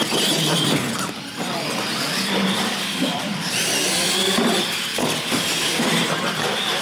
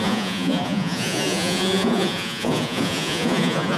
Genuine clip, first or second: first